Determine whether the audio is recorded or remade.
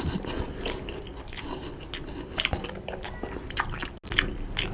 recorded